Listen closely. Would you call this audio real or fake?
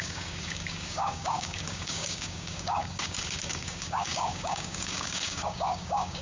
fake